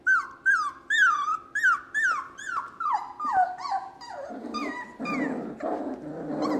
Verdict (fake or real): real